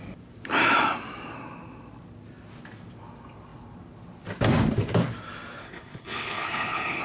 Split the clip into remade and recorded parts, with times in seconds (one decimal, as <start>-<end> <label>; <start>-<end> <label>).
0.0-5.6 recorded; 5.6-7.0 remade

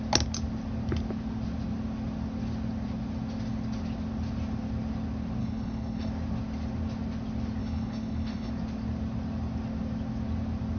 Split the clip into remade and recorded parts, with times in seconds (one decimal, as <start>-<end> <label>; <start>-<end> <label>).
0.0-5.4 recorded; 5.4-6.1 remade; 6.1-7.6 recorded; 7.6-8.5 remade; 8.5-10.8 recorded

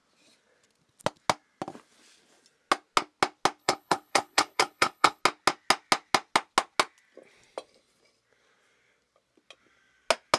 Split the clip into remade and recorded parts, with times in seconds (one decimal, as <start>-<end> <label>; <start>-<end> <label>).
0.0-3.6 recorded; 3.6-5.2 remade; 5.2-10.4 recorded